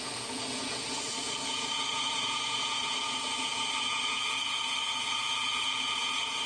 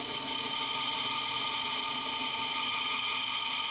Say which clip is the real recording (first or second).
second